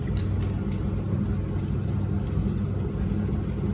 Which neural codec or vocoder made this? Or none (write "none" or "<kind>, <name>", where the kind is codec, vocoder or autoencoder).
none